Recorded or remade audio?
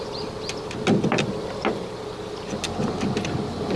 recorded